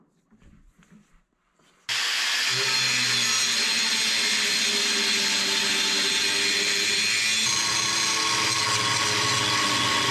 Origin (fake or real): real